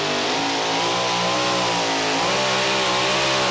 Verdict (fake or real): real